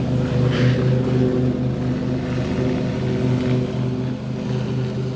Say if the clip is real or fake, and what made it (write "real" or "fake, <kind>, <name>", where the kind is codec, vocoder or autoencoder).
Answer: real